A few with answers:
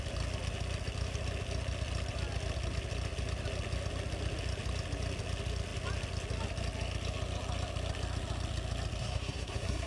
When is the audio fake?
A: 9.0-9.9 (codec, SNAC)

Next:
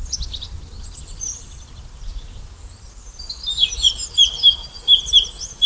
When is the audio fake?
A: none